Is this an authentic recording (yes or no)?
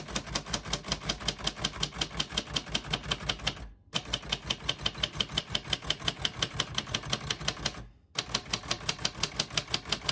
yes